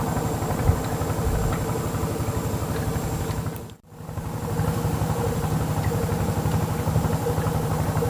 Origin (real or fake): real